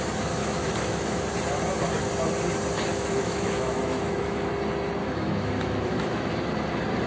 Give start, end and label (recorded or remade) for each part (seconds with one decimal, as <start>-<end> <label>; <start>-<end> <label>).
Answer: 0.0-0.4 recorded; 0.4-1.2 remade; 1.2-2.9 recorded; 2.9-4.5 remade; 4.5-5.0 recorded; 5.0-6.3 remade; 6.3-7.1 recorded